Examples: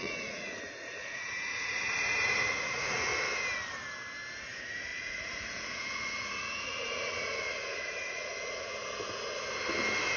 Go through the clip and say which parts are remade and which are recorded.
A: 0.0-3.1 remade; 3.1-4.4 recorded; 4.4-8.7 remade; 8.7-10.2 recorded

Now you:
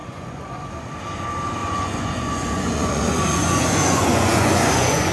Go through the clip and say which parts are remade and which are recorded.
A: 0.0-0.7 remade; 0.7-1.6 recorded; 1.6-5.1 remade

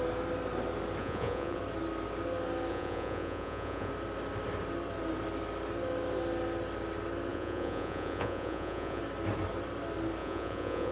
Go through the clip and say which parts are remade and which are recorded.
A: 0.0-1.0 recorded; 1.0-1.6 remade; 1.6-2.7 recorded; 2.7-3.9 remade; 3.9-7.3 recorded; 7.3-9.0 remade; 9.0-10.2 recorded; 10.2-10.9 remade